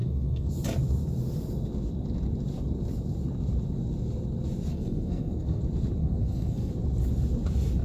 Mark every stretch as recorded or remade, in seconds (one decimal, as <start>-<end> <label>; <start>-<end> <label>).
0.0-0.5 remade; 0.5-4.7 recorded; 4.7-5.6 remade; 5.6-6.0 recorded; 6.0-6.7 remade; 6.7-7.8 recorded